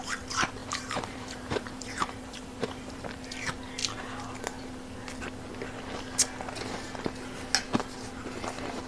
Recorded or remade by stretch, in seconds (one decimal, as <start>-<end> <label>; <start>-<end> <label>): 0.0-0.6 recorded; 0.6-3.3 remade; 3.3-8.9 recorded